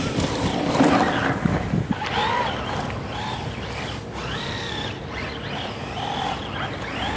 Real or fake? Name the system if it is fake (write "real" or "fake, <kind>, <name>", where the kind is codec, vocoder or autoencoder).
real